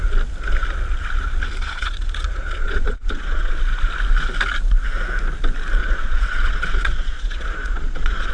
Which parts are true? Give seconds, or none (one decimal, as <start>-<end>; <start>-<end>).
0.0-1.6; 3.5-5.8